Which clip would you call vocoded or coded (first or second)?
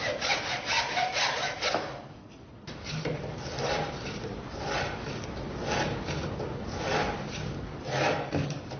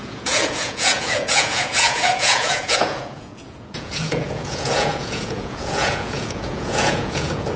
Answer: second